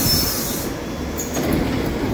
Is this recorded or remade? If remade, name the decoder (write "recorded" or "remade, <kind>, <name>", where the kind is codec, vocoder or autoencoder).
recorded